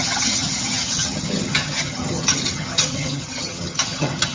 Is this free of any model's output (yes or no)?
no